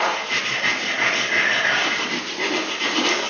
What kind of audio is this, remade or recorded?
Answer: recorded